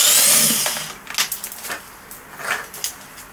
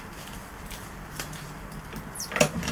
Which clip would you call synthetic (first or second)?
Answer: second